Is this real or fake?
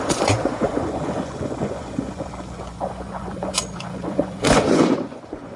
fake